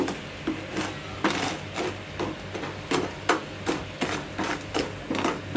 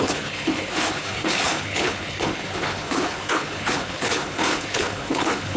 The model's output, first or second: second